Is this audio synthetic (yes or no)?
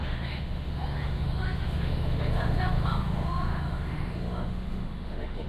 yes